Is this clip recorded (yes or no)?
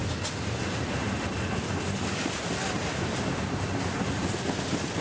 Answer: yes